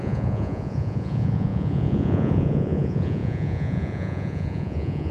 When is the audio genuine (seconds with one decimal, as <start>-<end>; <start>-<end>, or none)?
none